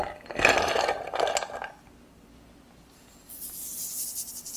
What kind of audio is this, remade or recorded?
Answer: recorded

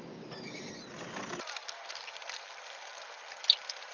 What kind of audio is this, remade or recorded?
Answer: recorded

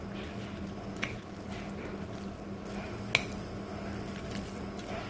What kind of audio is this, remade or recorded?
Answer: recorded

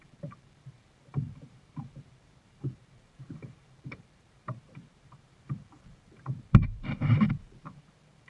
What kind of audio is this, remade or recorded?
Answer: remade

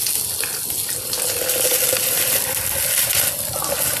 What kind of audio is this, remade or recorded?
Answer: recorded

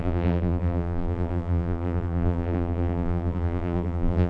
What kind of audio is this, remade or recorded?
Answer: remade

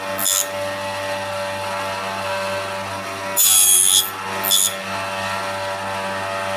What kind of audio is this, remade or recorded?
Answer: recorded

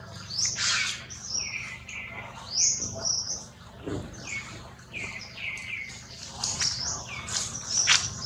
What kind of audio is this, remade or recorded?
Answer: recorded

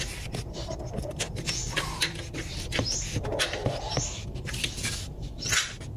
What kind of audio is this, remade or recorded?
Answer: remade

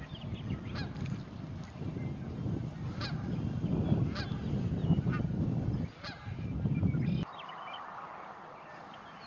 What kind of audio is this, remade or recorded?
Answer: recorded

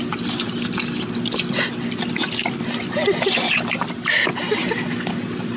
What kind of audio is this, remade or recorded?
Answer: recorded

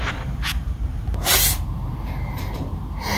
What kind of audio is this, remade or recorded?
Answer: remade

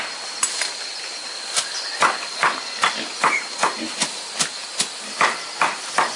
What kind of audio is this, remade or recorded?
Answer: recorded